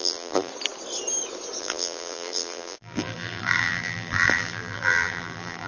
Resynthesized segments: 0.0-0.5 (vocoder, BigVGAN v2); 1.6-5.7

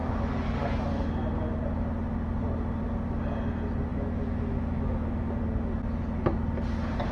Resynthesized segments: 3.9-5.4 (autoencoder, DAC-VAE)